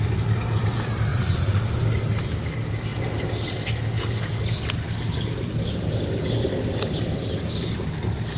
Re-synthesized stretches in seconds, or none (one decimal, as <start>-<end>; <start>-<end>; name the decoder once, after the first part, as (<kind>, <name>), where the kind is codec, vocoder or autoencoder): 1.1-1.6 (vocoder, Vocos)